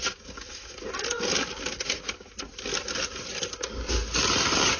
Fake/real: real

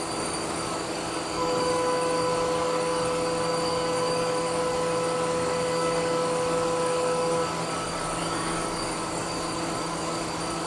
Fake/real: fake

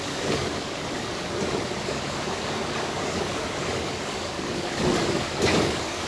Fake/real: fake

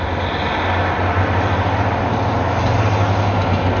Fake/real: real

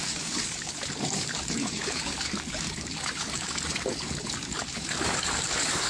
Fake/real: fake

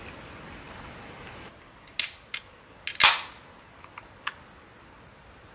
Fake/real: real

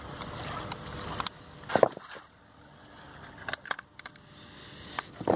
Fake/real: real